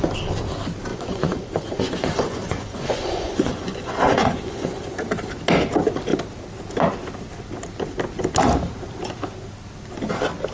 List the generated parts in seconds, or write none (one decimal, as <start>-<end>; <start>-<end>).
0.9-4.9